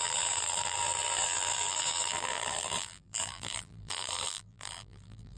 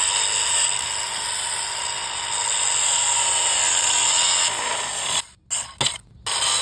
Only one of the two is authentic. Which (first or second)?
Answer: second